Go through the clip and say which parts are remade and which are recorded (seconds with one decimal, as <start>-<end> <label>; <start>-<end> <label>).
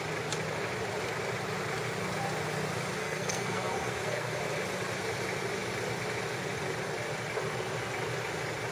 0.0-3.0 recorded; 3.0-4.4 remade; 4.4-8.7 recorded